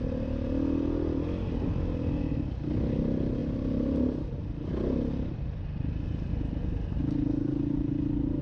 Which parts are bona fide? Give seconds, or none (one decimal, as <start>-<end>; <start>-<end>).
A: 0.0-8.4